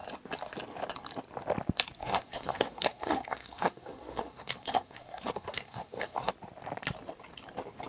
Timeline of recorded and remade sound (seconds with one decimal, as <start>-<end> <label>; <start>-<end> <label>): 0.0-2.0 recorded; 2.0-6.3 remade; 6.3-7.9 recorded